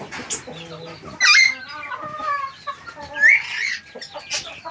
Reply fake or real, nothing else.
real